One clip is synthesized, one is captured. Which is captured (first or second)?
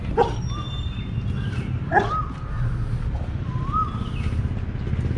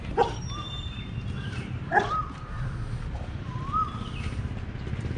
first